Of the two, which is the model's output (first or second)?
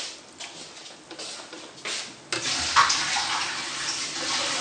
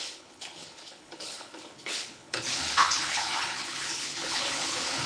second